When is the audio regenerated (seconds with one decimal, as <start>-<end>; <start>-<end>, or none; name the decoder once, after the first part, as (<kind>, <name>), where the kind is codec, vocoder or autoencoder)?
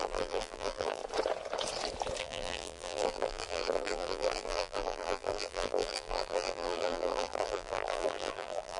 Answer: 0.0-1.0 (vocoder, BigVGAN v2); 2.2-8.8